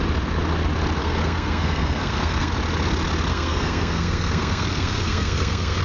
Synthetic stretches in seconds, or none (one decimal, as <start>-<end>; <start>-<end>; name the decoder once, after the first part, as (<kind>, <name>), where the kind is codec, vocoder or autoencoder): 1.0-2.5 (codec, SNAC); 3.3-5.8